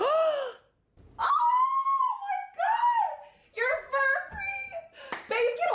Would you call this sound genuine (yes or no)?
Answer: yes